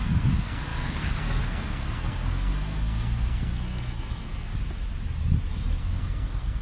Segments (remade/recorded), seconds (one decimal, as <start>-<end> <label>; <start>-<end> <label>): 0.0-4.5 remade; 4.5-5.8 recorded; 5.8-6.6 remade